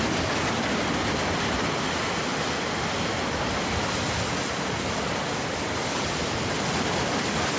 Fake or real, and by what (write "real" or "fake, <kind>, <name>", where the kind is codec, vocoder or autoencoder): real